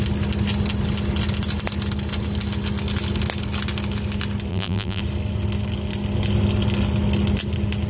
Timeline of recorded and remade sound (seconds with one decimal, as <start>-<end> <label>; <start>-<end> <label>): 0.0-4.5 recorded; 4.5-5.0 remade; 5.0-7.9 recorded